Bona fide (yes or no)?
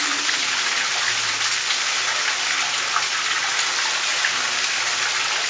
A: yes